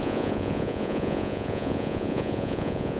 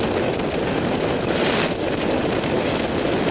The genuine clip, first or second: second